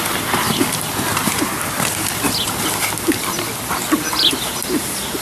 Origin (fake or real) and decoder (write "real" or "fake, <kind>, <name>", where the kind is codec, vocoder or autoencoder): real